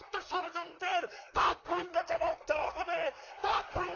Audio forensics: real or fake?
fake